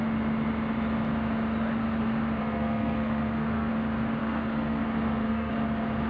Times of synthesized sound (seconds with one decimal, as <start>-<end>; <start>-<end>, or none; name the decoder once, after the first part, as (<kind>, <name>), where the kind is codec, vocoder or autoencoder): 2.4-3.7 (codec, SNAC); 4.2-5.5